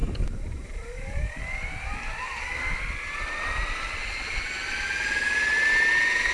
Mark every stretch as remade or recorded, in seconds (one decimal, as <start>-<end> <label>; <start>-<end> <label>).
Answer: 0.0-2.4 remade; 2.4-6.3 recorded